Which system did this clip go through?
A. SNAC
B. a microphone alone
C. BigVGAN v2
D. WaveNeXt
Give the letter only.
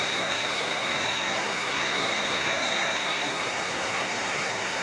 A